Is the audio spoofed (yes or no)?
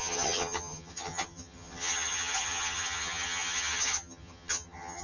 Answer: yes